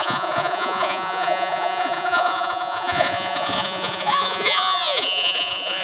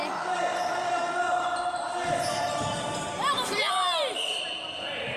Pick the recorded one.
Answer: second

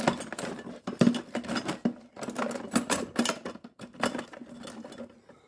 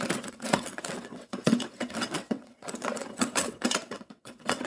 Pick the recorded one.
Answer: first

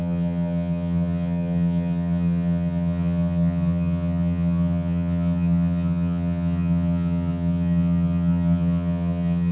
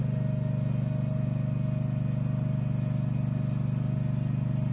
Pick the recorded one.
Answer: second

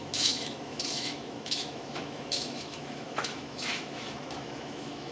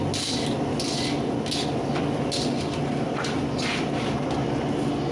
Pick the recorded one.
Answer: second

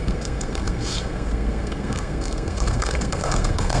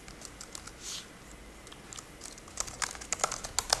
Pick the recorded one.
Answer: second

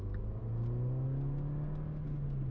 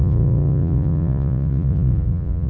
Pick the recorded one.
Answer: first